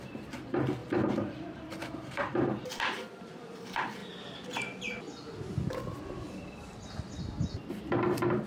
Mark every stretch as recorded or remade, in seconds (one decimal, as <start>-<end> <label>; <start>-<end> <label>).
0.0-4.0 remade; 4.0-7.7 recorded; 7.7-8.5 remade